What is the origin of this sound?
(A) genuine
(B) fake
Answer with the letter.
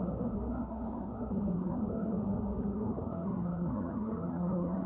B